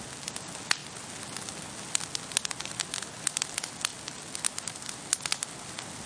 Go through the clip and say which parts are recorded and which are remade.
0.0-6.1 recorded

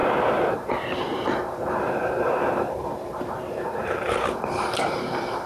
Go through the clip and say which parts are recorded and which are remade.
0.0-5.5 remade

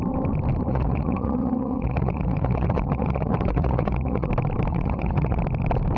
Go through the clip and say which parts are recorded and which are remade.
0.0-0.7 recorded; 0.7-4.3 remade; 4.3-4.7 recorded; 4.7-5.4 remade; 5.4-6.0 recorded

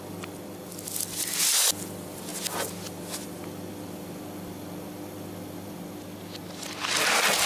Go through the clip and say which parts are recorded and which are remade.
0.0-7.5 recorded